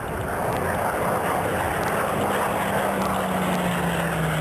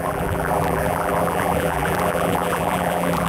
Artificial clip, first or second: second